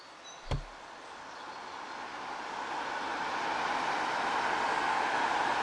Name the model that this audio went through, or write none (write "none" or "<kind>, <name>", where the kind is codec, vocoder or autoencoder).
none